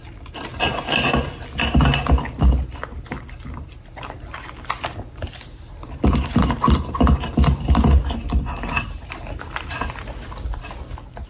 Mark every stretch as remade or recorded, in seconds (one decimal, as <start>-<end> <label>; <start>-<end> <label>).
0.0-11.3 recorded